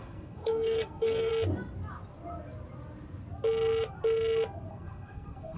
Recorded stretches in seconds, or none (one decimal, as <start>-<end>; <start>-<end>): 1.3-4.7